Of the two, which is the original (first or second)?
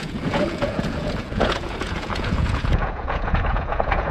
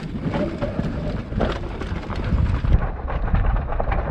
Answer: second